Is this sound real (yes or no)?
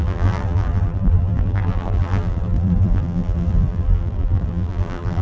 no